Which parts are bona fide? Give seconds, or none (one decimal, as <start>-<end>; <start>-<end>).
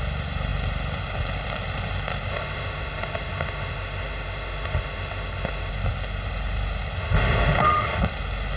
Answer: 0.0-2.3; 5.7-7.0; 8.0-8.6